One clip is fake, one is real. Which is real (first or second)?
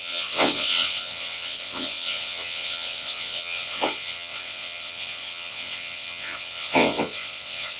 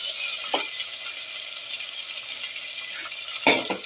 second